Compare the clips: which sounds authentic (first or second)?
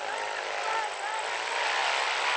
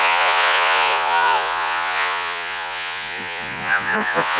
first